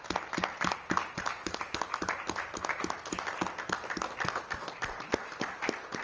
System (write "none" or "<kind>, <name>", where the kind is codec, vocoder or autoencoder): none